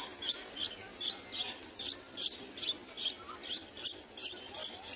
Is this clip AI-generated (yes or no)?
no